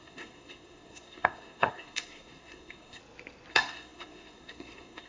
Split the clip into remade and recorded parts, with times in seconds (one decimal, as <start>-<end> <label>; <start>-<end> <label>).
0.0-3.0 remade; 3.0-3.5 recorded; 3.5-5.1 remade